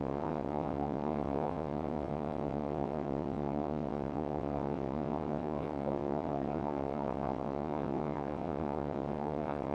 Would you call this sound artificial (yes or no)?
yes